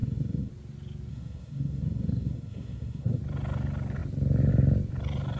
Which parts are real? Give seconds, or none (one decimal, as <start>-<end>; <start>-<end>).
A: 0.5-1.1; 3.2-5.4